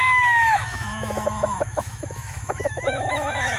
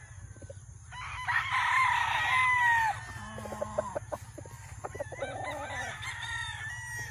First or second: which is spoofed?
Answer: first